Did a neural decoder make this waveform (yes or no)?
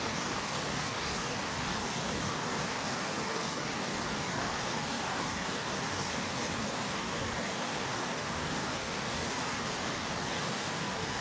yes